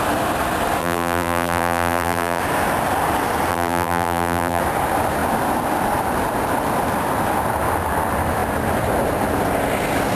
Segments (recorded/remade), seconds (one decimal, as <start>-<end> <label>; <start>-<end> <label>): 0.0-0.8 recorded; 0.8-2.4 remade; 2.4-3.5 recorded; 3.5-4.6 remade; 4.6-10.1 recorded